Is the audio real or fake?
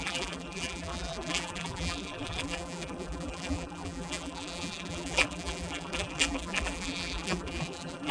fake